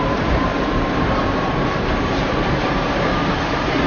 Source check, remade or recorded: remade